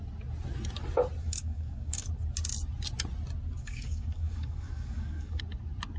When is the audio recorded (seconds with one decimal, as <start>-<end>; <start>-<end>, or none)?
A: 0.0-1.2; 2.1-3.6; 5.4-6.0